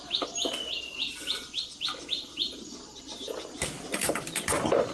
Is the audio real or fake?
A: real